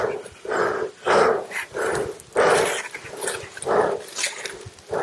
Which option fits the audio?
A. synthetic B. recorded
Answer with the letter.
B